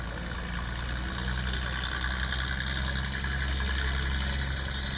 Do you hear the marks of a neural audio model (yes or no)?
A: no